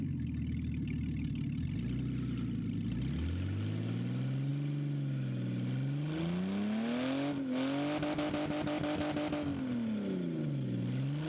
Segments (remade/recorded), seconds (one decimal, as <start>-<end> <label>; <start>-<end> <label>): 0.0-11.3 recorded